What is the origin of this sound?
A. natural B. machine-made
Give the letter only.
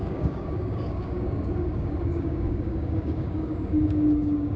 B